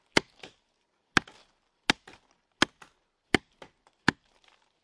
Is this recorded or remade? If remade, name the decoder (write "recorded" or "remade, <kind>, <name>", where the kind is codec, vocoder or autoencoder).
recorded